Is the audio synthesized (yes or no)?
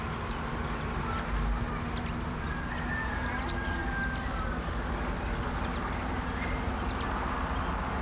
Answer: no